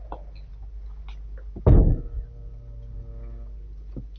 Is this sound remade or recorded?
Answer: recorded